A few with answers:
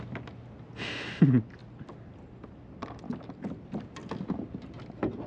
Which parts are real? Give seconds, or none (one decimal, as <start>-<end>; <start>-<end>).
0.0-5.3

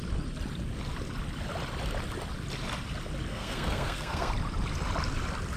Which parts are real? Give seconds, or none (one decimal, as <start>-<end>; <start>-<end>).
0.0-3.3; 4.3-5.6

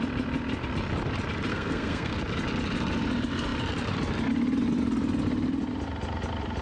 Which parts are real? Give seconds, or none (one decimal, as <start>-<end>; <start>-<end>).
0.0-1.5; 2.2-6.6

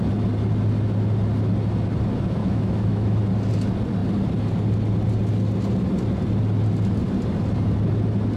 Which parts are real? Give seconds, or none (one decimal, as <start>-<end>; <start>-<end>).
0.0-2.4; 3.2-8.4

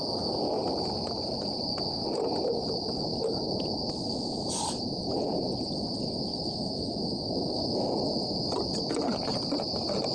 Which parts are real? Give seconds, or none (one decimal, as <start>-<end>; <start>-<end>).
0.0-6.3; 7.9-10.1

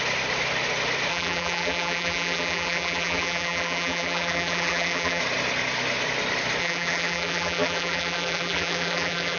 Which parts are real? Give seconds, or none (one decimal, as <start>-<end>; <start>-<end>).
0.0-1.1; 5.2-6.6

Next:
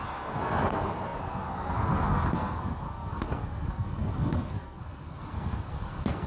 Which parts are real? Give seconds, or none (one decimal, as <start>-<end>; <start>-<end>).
none